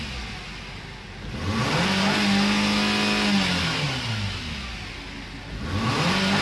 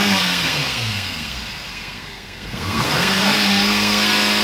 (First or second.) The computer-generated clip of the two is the second